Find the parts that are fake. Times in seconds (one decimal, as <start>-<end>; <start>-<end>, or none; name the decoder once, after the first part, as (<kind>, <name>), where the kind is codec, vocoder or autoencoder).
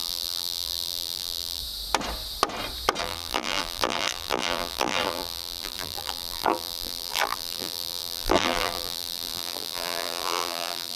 0.0-1.6 (vocoder, BigVGAN v2); 3.0-11.0